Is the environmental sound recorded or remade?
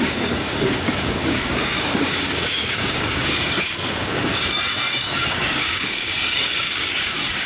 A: remade